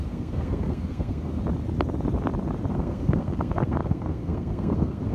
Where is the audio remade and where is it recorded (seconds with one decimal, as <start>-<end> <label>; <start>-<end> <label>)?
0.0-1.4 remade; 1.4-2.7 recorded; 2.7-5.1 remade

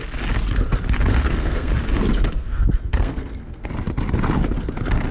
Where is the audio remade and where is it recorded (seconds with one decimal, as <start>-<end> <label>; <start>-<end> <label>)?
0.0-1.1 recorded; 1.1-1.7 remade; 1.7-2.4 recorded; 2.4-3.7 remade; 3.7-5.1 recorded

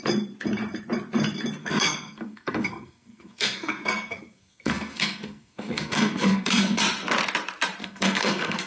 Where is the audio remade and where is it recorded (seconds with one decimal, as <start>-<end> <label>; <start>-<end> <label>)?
0.0-1.6 recorded; 1.6-6.8 remade; 6.8-7.8 recorded; 7.8-8.7 remade

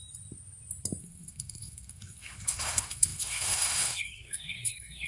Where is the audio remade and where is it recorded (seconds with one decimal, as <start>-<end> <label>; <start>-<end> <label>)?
0.0-1.0 recorded; 1.0-5.1 remade

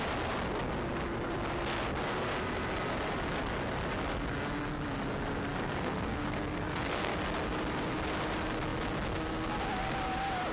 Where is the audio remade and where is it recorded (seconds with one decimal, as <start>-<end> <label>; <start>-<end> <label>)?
0.0-5.5 recorded; 5.5-7.1 remade; 7.1-10.5 recorded